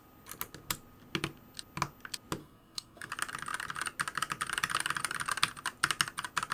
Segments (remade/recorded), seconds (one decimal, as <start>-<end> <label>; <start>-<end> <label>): 0.0-2.4 recorded; 2.4-3.1 remade; 3.1-6.5 recorded